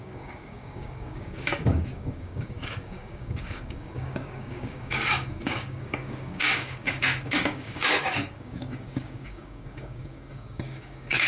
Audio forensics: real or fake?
fake